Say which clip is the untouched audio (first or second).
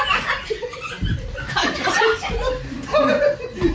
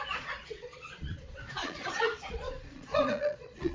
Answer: first